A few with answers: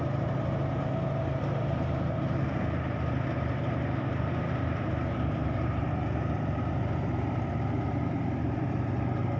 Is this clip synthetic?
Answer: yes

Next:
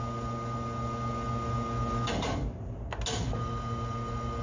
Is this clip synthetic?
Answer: no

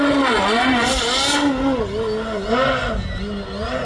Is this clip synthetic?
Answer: no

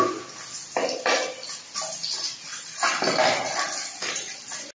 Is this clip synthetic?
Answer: no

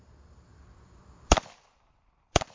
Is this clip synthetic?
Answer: yes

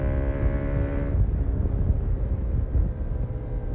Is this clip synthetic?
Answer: no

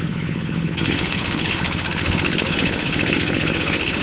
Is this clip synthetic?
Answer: yes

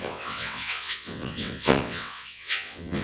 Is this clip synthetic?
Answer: yes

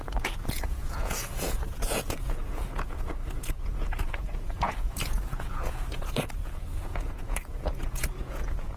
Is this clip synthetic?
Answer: yes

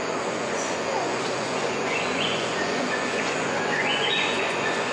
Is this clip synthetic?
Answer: yes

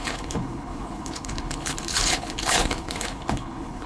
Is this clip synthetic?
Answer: yes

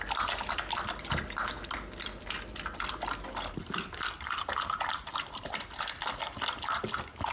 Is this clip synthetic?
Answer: no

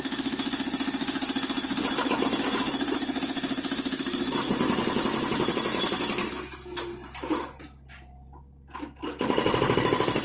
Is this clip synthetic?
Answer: no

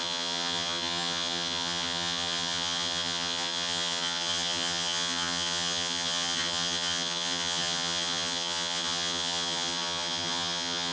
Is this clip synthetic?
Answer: yes